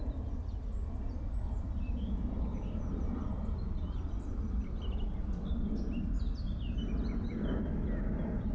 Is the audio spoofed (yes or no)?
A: no